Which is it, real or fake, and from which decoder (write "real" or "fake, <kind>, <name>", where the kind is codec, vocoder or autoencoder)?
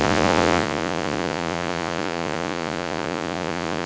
fake, vocoder, Vocos